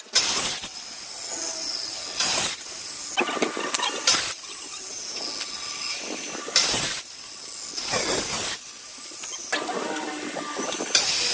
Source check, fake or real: real